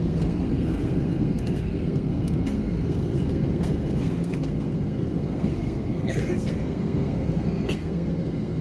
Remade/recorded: remade